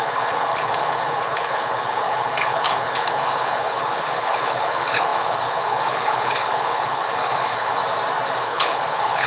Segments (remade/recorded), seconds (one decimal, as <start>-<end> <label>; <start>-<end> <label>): 0.0-7.8 remade; 7.8-8.4 recorded; 8.4-9.3 remade

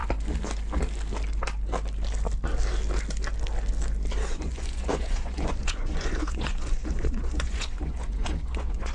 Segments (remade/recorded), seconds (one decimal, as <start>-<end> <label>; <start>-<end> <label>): 0.0-4.3 recorded; 4.3-8.9 remade

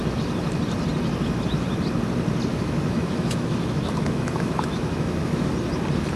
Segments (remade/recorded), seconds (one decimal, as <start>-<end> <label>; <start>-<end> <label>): 0.0-2.5 recorded; 2.5-5.5 remade; 5.5-6.2 recorded

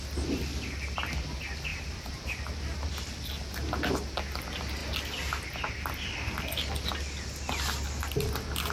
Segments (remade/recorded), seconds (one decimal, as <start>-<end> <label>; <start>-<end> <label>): 0.0-1.7 recorded; 1.7-2.4 remade; 2.4-8.7 recorded

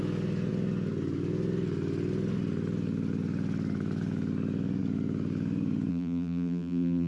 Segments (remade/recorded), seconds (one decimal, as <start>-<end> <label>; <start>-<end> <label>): 0.0-5.9 recorded; 5.9-7.1 remade